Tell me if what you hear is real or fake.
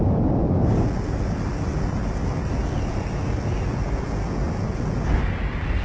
real